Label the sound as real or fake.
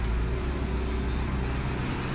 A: real